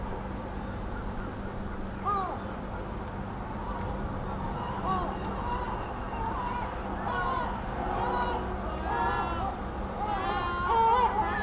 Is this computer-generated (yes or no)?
no